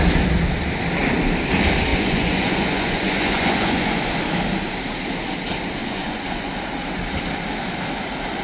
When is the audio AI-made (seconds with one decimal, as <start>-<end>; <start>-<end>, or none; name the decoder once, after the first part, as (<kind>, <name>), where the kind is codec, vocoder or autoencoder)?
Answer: 1.9-4.0 (vocoder, Vocos); 5.8-6.5